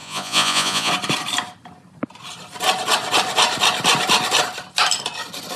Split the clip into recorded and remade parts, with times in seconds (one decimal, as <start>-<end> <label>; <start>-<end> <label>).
0.0-0.9 remade; 0.9-5.6 recorded